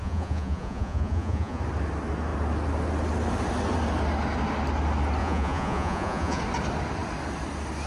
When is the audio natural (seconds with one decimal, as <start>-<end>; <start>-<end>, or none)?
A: 1.6-5.2; 6.4-7.9